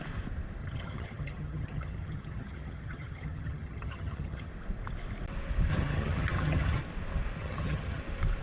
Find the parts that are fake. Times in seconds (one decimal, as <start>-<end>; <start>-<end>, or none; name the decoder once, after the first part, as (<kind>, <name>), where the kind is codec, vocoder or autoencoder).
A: 0.6-4.5 (vocoder, HiFi-GAN); 5.7-6.8; 7.4-8.0